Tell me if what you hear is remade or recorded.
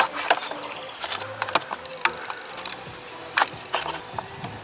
recorded